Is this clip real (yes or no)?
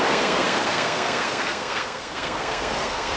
no